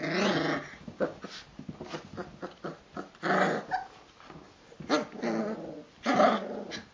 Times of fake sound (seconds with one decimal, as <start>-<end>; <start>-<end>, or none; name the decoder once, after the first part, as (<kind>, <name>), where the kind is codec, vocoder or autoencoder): 0.7-1.2 (codec, DAC)